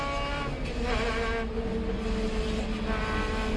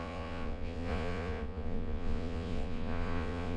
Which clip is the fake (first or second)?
second